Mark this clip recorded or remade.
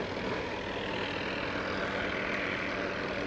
recorded